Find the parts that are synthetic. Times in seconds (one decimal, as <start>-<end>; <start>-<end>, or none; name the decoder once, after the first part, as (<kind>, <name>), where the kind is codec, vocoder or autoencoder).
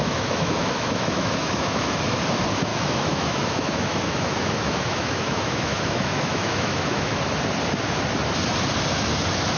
0.0-2.0 (autoencoder, DAC-VAE); 2.7-7.2